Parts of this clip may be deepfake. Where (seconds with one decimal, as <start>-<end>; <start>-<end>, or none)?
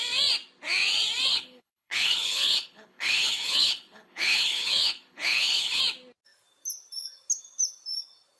1.3-5.8